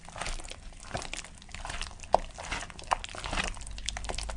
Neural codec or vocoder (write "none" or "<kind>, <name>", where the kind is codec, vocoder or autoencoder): none